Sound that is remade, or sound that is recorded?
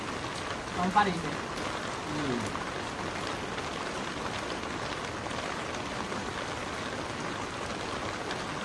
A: recorded